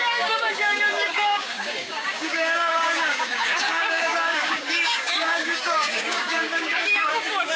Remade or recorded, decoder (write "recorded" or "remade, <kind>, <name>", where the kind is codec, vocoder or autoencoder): remade, codec, DAC